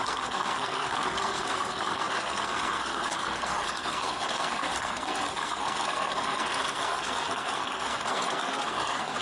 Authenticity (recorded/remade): remade